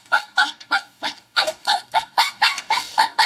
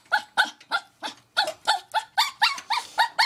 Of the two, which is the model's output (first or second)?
first